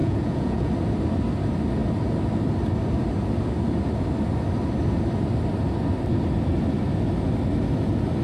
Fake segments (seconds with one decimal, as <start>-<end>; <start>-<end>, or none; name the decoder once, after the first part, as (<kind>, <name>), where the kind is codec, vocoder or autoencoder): 0.0-0.7 (vocoder, Vocos)